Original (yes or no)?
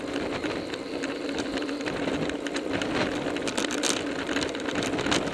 yes